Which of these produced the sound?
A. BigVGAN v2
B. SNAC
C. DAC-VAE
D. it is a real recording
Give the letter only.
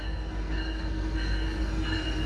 B